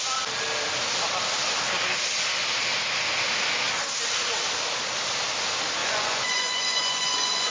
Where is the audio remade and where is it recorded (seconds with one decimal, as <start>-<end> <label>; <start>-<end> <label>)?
0.0-5.8 recorded; 5.8-7.5 remade